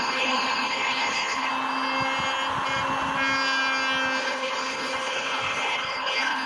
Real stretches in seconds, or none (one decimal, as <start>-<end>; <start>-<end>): 1.5-4.2